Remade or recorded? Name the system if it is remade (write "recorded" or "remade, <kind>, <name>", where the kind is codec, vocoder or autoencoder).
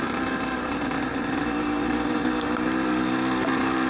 remade, vocoder, BigVGAN v2